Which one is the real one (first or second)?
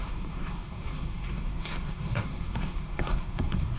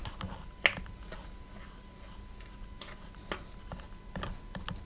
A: second